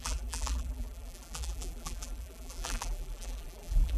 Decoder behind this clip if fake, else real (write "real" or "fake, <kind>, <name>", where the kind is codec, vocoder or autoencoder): fake, vocoder, BigVGAN v2